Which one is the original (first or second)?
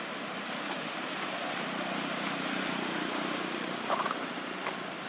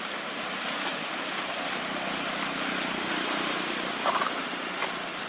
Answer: second